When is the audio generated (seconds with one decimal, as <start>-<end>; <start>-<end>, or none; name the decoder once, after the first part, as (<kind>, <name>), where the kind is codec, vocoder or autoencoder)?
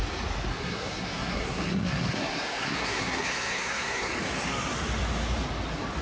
0.5-4.1 (codec, SNAC)